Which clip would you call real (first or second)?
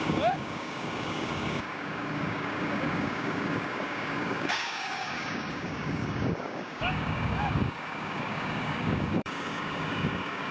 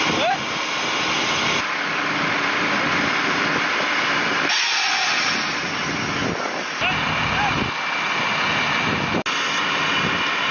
second